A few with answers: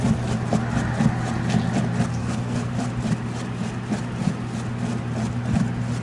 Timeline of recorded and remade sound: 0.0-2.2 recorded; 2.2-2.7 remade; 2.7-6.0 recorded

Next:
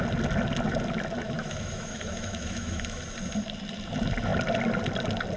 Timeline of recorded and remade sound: 0.0-1.2 recorded; 1.2-3.0 remade; 3.0-5.4 recorded

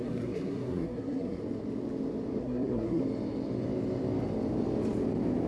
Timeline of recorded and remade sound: 0.0-1.4 remade; 1.4-2.4 recorded; 2.4-3.0 remade; 3.0-5.5 recorded

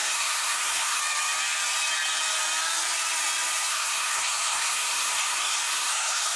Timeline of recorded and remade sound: 0.0-1.0 remade; 1.0-3.7 recorded; 3.7-6.4 remade

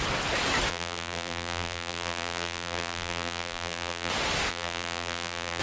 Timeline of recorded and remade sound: 0.0-0.7 recorded; 0.7-4.1 remade; 4.1-4.5 recorded; 4.5-5.6 remade